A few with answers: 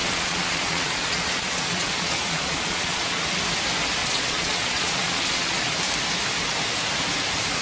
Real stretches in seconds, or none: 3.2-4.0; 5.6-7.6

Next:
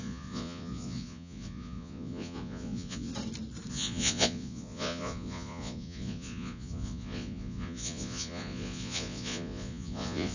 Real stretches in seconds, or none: 3.1-3.7

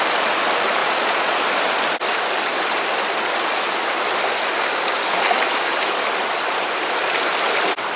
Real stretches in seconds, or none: 0.0-0.8; 1.4-8.0

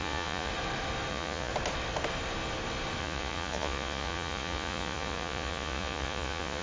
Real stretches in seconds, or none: 0.5-1.1; 1.5-3.0

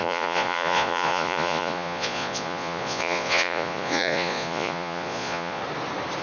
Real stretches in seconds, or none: 5.6-6.2

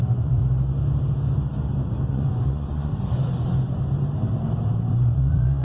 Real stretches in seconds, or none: 0.4-2.1; 2.9-4.9